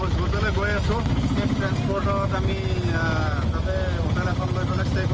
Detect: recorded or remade recorded